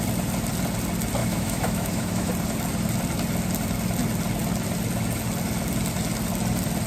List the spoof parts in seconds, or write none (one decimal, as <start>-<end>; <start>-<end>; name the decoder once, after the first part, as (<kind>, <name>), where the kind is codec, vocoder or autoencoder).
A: 1.2-2.3 (autoencoder, DAC-VAE)